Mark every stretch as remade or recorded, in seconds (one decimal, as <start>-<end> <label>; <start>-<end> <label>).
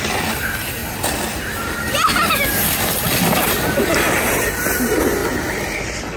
0.0-6.2 recorded